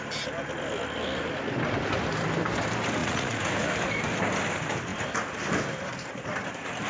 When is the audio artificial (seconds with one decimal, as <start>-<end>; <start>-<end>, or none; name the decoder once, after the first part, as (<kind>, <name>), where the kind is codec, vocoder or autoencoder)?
3.0-3.7 (vocoder, Vocos)